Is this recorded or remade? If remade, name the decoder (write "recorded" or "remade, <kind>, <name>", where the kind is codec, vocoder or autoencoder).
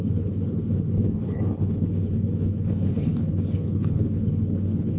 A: remade, codec, HILCodec